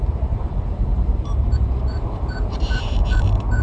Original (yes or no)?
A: no